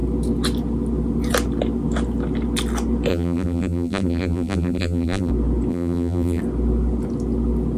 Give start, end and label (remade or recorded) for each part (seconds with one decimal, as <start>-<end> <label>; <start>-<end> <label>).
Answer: 0.0-3.1 recorded; 3.1-5.3 remade; 5.3-5.7 recorded; 5.7-6.4 remade; 6.4-7.8 recorded